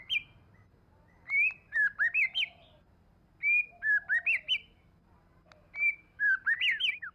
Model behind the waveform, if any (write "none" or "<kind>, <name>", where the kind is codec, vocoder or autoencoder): none